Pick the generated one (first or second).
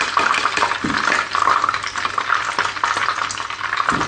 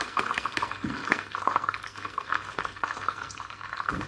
second